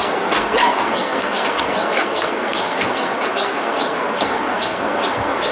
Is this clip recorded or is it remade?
remade